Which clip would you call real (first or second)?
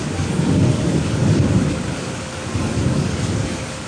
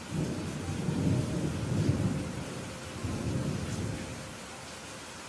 second